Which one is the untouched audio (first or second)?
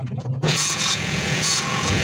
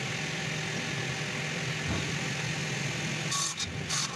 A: second